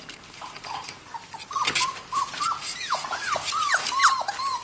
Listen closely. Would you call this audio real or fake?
fake